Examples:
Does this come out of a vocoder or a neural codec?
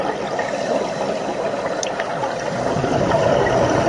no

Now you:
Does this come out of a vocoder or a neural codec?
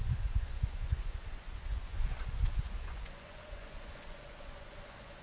yes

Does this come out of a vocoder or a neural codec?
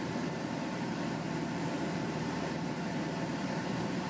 yes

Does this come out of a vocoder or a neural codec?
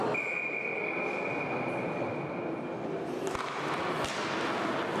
no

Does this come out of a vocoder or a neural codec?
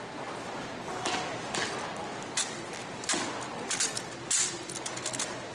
no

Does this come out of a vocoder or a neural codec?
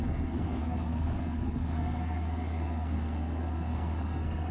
yes